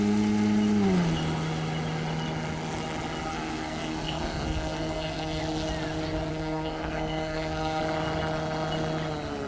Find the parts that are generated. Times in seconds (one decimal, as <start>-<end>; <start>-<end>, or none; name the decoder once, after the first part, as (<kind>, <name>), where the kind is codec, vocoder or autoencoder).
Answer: 3.3-5.4 (codec, SNAC); 6.3-7.8